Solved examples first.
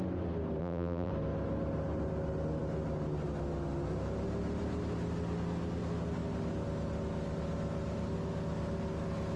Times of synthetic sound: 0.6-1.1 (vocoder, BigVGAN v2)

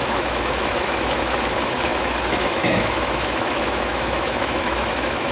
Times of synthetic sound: 0.0-5.3 (autoencoder, DAC-VAE)

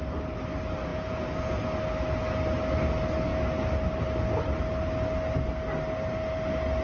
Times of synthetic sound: 0.9-1.6 (vocoder, Vocos)

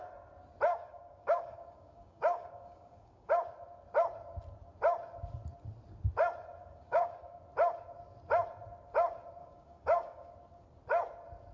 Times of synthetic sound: 0.7-3.3 (codec, DAC); 6.6-7.4; 9.4-10.3

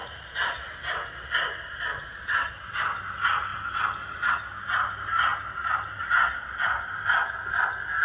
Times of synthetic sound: 0.0-2.5 (vocoder, BigVGAN v2); 5.3-6.0

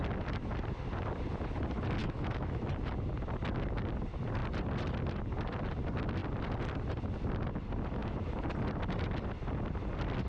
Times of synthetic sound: 2.0-2.7 (autoencoder, DAC-VAE)

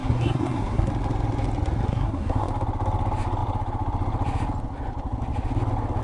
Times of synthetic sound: 0.0-0.9 (codec, SNAC); 1.9-2.5